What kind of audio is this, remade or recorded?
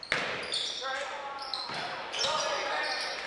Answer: recorded